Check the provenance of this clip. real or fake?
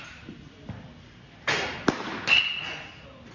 real